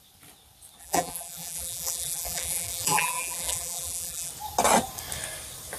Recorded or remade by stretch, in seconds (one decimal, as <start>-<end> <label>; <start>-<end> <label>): 0.0-0.8 recorded; 0.8-4.3 remade; 4.3-5.8 recorded